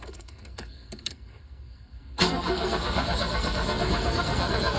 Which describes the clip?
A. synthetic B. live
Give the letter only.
A